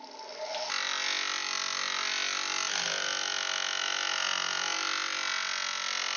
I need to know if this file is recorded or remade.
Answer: recorded